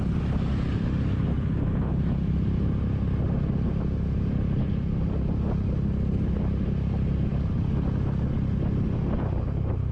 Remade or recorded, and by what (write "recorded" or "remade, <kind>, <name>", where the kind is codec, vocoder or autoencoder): recorded